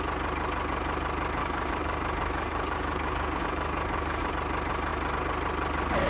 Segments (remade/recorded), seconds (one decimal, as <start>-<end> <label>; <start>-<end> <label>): 0.0-1.4 recorded; 1.4-4.3 remade; 4.3-6.1 recorded